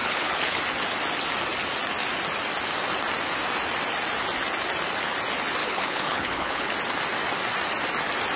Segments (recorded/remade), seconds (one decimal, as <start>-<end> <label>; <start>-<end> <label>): 0.0-0.6 remade; 0.6-5.6 recorded; 5.6-6.7 remade; 6.7-8.4 recorded